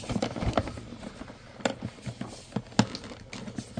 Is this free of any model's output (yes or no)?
yes